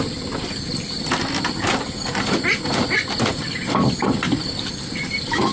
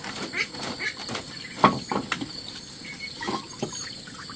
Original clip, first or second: second